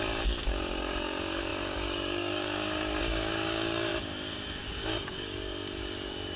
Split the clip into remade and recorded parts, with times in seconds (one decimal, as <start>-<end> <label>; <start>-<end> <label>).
0.0-6.4 remade